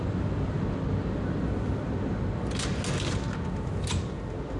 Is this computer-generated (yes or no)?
no